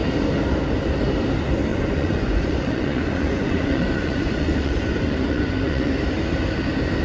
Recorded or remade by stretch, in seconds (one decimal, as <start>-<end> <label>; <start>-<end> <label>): 0.0-1.7 recorded; 1.7-5.9 remade; 5.9-7.0 recorded